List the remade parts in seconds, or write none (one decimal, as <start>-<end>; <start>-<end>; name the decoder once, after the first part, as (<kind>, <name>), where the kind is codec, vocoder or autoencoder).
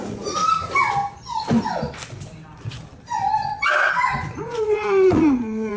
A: 0.0-0.4 (vocoder, Vocos); 3.9-5.8